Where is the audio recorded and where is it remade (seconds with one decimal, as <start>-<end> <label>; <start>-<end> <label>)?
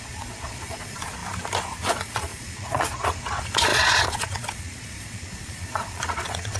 0.0-1.2 remade; 1.2-1.8 recorded; 1.8-6.6 remade